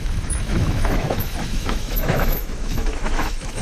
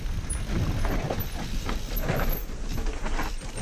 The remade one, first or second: first